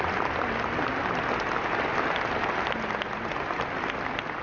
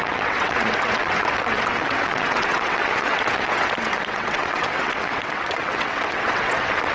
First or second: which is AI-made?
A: second